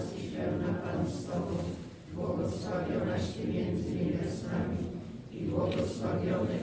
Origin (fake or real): real